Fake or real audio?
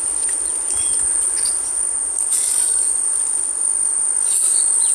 real